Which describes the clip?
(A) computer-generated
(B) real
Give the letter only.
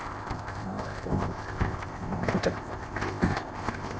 A